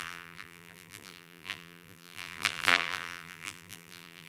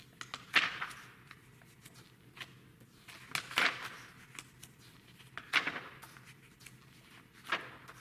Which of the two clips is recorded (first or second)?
second